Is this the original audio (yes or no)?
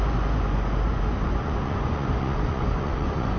no